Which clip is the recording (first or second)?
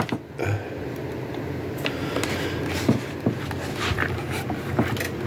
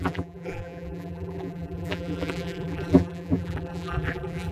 first